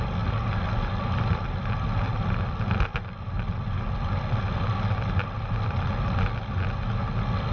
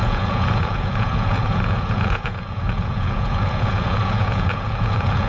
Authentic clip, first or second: first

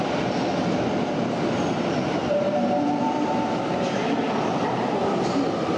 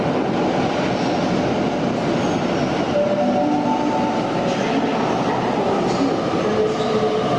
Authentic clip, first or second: second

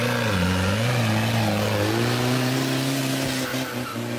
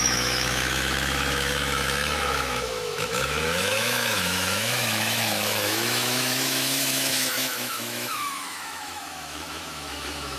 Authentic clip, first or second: first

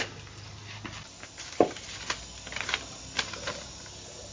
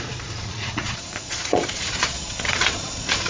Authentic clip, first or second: first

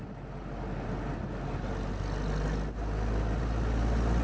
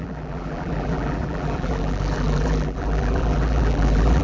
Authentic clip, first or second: first